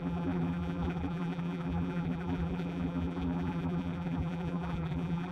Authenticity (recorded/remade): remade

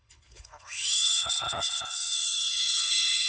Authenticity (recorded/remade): remade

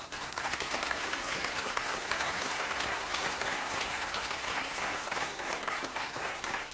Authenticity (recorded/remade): remade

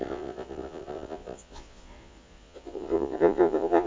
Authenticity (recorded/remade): remade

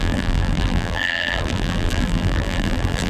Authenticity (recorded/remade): remade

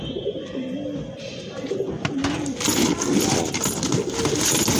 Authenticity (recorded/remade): recorded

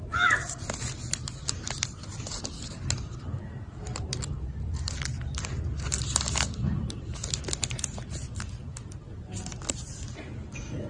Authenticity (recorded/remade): recorded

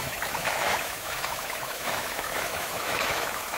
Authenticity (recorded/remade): remade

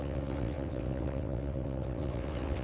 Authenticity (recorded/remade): remade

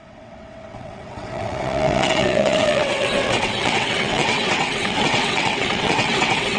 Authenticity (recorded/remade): remade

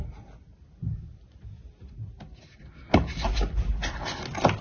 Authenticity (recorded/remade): recorded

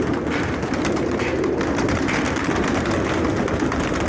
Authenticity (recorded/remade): recorded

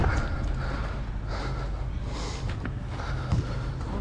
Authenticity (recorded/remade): recorded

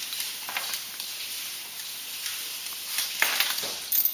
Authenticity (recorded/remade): recorded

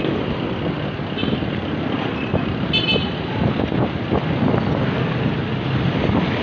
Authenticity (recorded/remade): recorded